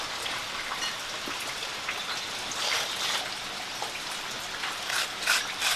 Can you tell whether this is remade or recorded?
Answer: recorded